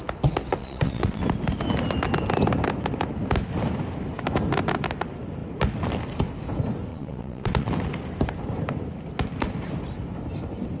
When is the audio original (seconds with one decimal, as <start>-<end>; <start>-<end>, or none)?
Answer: 0.0-0.6; 1.2-6.9; 7.7-10.8